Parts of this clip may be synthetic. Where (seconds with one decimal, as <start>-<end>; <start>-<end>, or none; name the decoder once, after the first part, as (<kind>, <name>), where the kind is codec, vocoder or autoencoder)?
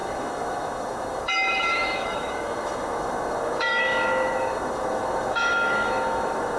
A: 0.0-6.6 (autoencoder, DAC-VAE)